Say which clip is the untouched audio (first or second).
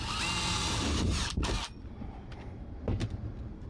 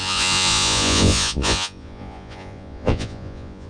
first